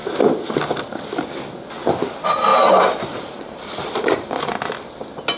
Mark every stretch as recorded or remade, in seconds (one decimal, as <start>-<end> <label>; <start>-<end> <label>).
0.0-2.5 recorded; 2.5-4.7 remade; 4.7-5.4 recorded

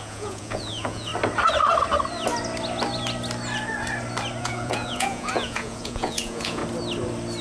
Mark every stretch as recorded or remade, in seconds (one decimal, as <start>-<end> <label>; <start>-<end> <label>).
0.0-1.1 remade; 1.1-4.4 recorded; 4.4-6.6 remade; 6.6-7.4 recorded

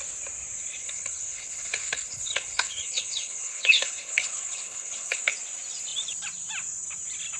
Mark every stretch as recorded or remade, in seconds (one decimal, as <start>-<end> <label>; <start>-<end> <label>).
0.0-0.8 recorded; 0.8-5.2 remade; 5.2-7.4 recorded

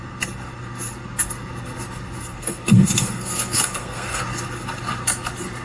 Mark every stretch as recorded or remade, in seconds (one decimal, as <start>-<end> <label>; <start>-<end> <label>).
0.0-2.3 recorded; 2.3-4.2 remade; 4.2-5.6 recorded